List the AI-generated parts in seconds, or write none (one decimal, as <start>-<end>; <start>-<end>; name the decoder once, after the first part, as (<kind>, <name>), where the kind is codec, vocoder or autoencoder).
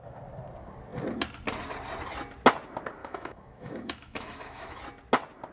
3.0-4.8 (autoencoder, DAC-VAE)